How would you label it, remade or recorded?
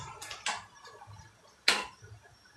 recorded